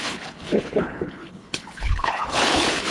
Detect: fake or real fake